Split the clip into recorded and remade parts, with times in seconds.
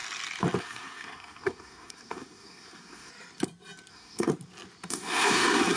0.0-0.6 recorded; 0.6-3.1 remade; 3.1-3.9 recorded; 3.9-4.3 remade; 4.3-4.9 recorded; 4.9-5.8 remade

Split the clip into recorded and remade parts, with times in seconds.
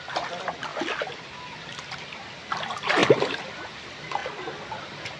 0.0-5.2 recorded